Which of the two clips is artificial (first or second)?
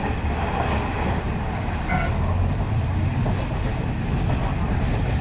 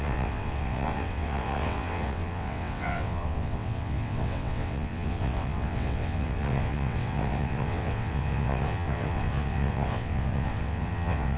second